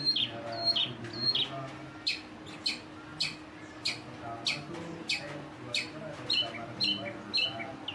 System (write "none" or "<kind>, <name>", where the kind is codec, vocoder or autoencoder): none